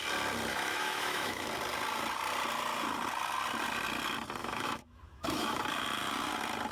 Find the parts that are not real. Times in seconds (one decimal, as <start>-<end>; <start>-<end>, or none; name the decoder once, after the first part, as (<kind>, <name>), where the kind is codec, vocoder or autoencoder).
0.5-1.5 (autoencoder, DAC-VAE); 4.4-5.6